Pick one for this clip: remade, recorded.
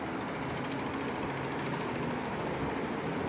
recorded